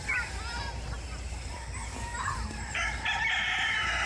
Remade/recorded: recorded